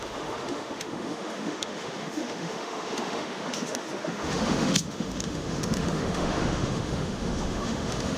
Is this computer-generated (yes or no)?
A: yes